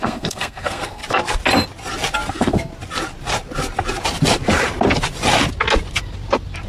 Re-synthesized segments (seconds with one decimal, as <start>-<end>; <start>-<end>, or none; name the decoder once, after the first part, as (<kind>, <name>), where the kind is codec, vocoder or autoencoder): 0.0-1.0 (codec, SNAC); 2.3-2.7